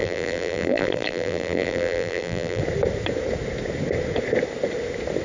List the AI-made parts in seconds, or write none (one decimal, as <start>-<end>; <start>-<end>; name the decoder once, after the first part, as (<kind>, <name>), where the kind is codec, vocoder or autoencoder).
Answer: 0.0-2.6 (vocoder, BigVGAN v2)